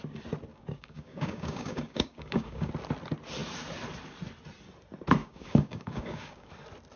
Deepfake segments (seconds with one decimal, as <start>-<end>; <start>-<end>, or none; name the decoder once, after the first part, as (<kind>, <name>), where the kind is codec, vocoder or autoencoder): 0.5-2.7 (codec, DAC); 5.2-6.5